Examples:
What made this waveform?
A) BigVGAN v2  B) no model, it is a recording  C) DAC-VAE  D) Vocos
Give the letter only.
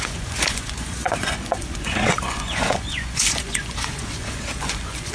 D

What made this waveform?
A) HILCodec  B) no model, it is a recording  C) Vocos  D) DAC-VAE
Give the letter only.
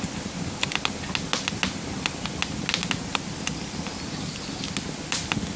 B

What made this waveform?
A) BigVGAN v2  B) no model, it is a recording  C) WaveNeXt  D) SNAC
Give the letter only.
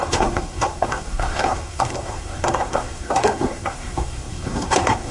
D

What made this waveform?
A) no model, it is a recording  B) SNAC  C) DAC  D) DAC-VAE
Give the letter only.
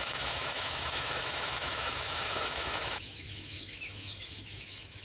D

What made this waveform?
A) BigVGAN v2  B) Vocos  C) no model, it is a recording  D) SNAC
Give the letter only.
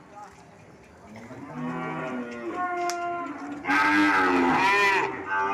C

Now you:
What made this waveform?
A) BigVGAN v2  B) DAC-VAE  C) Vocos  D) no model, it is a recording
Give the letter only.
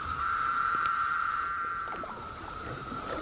A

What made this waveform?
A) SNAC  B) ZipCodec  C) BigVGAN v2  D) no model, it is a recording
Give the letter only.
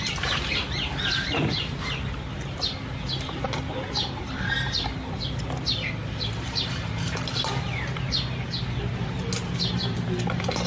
D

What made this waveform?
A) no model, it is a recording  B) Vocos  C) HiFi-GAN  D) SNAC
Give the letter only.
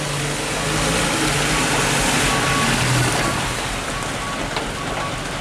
A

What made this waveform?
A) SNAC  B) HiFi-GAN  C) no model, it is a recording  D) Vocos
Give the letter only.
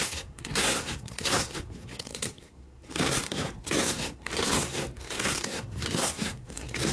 A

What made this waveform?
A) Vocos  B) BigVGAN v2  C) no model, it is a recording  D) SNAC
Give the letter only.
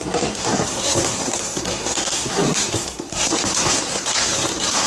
D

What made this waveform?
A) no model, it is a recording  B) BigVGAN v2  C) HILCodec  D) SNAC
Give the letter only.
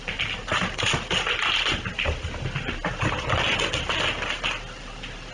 A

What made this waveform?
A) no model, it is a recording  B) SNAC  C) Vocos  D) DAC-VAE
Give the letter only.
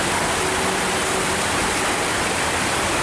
A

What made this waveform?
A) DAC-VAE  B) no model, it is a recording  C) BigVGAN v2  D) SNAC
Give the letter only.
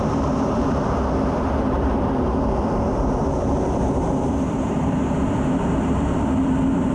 C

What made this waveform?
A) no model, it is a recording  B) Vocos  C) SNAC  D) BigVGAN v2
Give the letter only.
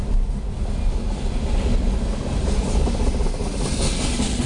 A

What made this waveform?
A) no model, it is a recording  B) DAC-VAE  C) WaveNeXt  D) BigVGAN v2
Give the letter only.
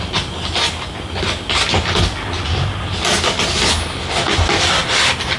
A